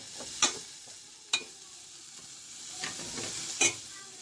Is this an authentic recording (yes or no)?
yes